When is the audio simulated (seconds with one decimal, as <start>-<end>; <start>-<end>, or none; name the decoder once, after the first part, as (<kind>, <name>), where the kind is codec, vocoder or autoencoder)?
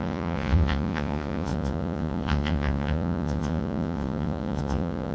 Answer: 0.0-5.1 (vocoder, Vocos)